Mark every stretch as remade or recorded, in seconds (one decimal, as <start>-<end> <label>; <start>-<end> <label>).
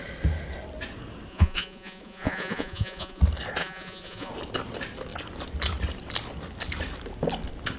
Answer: 0.0-1.3 recorded; 1.3-3.2 remade; 3.2-3.6 recorded; 3.6-4.3 remade; 4.3-7.8 recorded